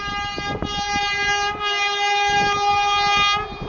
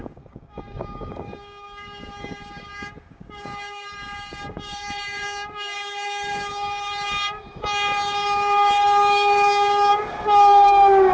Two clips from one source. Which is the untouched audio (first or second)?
first